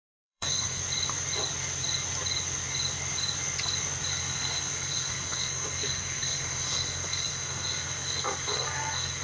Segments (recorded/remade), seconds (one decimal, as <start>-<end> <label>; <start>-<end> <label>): 0.0-0.8 remade; 0.8-4.1 recorded; 4.1-9.2 remade